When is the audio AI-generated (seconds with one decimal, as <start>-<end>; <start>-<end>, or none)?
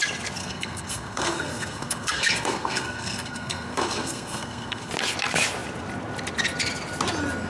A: 0.4-4.9